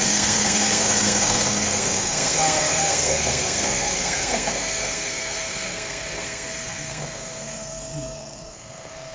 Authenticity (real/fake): fake